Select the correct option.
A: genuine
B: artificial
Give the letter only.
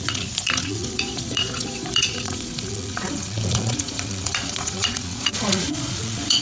B